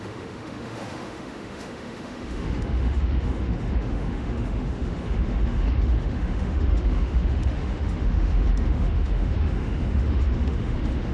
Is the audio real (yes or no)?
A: no